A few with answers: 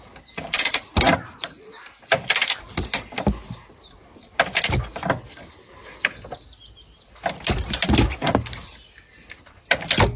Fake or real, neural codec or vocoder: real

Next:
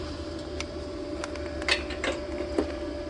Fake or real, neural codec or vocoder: real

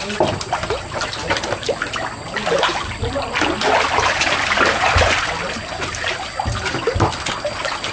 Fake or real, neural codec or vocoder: real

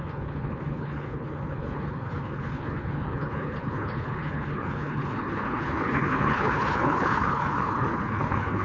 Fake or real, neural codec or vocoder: fake, codec, HILCodec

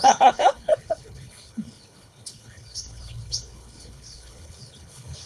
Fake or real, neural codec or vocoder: fake, codec, HILCodec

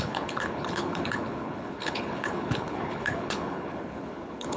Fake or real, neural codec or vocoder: fake, codec, HILCodec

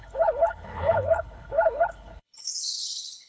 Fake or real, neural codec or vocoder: fake, codec, HILCodec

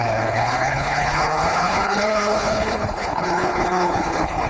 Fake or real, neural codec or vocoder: fake, codec, HILCodec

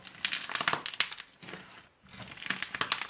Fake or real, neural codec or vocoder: real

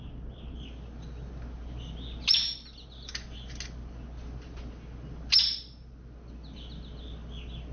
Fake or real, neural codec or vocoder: real